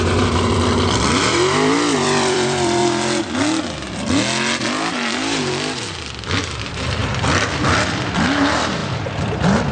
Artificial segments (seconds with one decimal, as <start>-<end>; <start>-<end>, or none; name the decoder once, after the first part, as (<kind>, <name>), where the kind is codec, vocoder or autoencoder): 0.0-2.8 (vocoder, BigVGAN v2); 6.6-7.0; 7.6-9.7